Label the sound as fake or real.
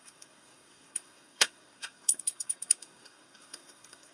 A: fake